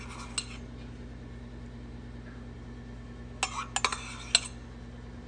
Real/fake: real